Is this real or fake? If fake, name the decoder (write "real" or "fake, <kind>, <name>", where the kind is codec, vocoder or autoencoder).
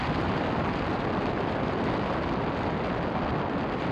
real